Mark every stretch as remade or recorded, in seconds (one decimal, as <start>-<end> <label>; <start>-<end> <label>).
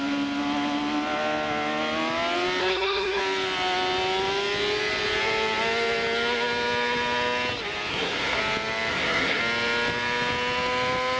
0.0-2.6 recorded; 2.6-3.2 remade; 3.2-7.9 recorded; 7.9-8.4 remade; 8.4-8.9 recorded; 8.9-9.4 remade; 9.4-11.2 recorded